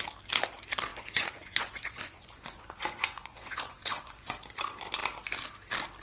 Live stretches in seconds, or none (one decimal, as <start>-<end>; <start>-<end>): 0.0-0.9; 4.5-6.0